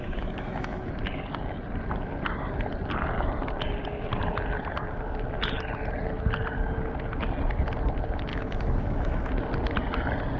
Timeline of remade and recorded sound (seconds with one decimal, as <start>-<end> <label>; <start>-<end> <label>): 0.0-0.9 remade; 0.9-8.3 recorded; 8.3-9.3 remade; 9.3-10.4 recorded